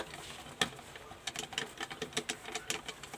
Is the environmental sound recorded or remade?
recorded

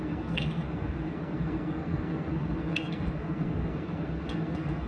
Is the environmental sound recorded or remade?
remade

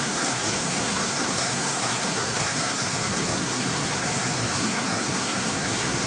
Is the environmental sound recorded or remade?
remade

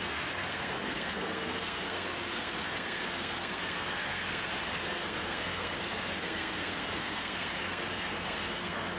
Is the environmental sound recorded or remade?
remade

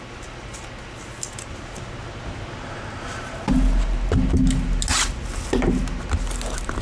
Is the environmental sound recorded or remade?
recorded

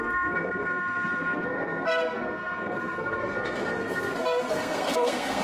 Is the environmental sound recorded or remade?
remade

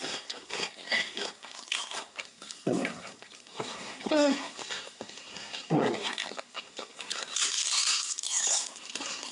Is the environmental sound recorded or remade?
remade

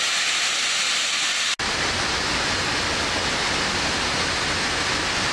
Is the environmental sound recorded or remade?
recorded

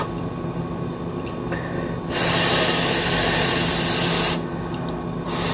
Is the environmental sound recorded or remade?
recorded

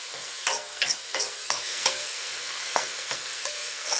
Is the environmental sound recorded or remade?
remade